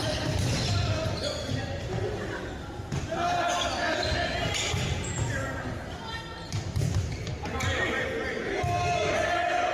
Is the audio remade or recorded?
recorded